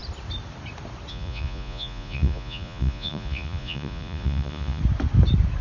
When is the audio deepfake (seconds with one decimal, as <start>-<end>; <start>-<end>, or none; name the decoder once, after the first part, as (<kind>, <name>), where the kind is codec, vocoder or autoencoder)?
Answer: 1.1-4.8 (vocoder, Vocos)